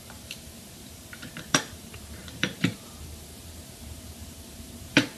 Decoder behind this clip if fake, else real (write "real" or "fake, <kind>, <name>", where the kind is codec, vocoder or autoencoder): fake, vocoder, BigVGAN v2